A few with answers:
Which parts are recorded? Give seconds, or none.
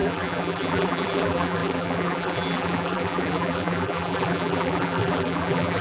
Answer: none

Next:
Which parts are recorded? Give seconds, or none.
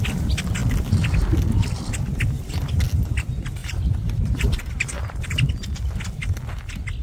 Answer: 0.0-3.6; 5.5-7.0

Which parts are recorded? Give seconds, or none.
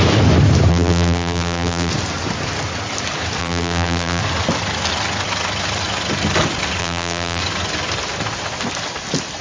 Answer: 0.0-0.7; 1.9-3.4; 4.2-6.8; 7.4-9.4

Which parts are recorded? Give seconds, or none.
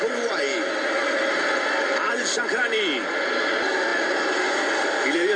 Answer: 0.0-1.0; 1.8-3.9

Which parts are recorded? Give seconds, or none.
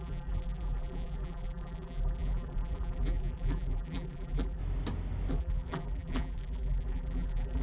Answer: 4.6-5.3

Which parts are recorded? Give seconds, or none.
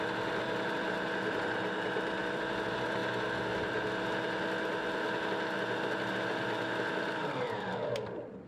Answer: 3.0-6.9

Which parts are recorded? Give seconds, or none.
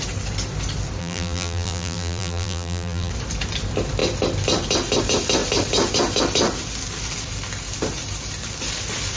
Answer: 0.0-1.0; 3.1-9.2